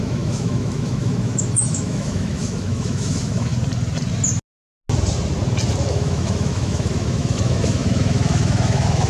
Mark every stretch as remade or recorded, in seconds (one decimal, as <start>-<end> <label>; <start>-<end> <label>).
0.0-3.5 remade; 3.5-5.9 recorded; 5.9-9.1 remade